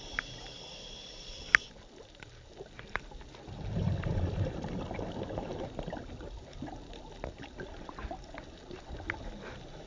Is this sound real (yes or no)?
yes